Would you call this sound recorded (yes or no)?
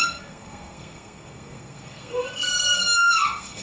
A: no